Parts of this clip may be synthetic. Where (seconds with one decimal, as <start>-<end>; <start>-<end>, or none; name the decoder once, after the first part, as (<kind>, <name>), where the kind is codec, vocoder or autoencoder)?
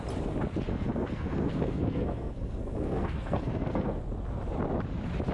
0.7-3.9 (codec, SNAC)